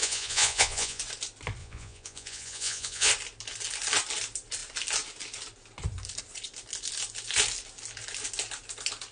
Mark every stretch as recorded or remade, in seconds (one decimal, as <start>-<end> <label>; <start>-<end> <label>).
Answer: 0.0-1.0 remade; 1.0-1.6 recorded; 1.6-3.1 remade; 3.1-9.1 recorded